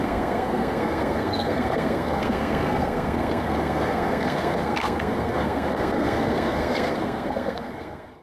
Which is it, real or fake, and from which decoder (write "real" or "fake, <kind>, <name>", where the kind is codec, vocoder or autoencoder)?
fake, codec, SNAC